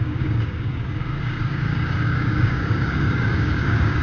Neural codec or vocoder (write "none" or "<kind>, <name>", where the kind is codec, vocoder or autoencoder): codec, DAC